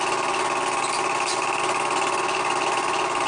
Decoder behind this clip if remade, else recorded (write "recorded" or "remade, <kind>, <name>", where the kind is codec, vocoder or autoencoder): recorded